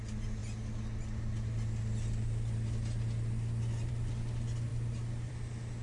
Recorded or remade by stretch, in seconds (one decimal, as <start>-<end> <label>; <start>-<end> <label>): 0.0-5.8 recorded

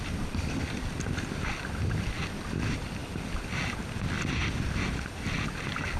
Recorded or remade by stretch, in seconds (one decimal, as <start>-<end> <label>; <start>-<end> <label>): 0.0-6.0 recorded

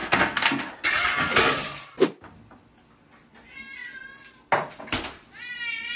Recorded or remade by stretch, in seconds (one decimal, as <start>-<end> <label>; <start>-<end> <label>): 0.0-0.7 remade; 0.7-6.0 recorded

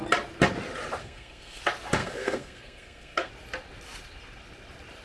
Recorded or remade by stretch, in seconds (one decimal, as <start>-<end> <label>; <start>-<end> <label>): 0.0-1.0 recorded; 1.0-1.6 remade; 1.6-2.0 recorded; 2.0-3.3 remade; 3.3-5.0 recorded